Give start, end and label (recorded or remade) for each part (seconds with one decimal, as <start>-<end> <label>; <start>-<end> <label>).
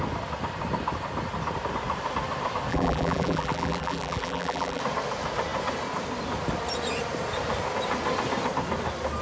0.0-2.7 recorded; 2.7-4.8 remade; 4.8-9.2 recorded